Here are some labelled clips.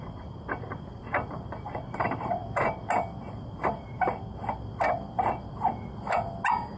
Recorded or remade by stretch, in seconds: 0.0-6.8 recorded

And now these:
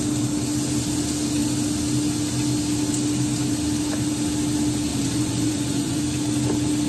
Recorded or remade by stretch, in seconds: 0.0-4.9 recorded; 4.9-6.0 remade; 6.0-6.9 recorded

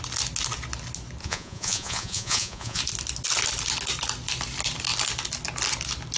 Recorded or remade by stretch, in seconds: 0.0-1.2 recorded; 1.2-2.8 remade; 2.8-6.2 recorded

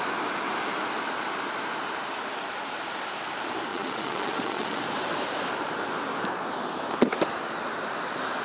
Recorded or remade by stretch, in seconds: 0.0-3.7 recorded; 3.7-4.8 remade; 4.8-8.4 recorded